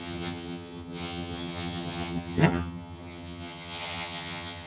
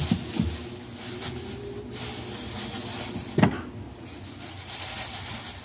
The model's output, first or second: first